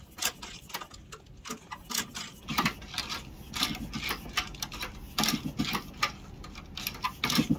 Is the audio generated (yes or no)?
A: no